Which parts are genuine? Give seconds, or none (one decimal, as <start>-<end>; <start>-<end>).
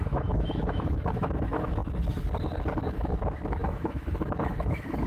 1.8-2.9